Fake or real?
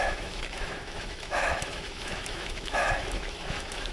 fake